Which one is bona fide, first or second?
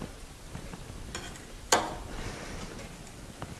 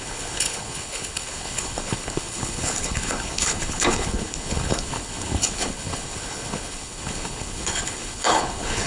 first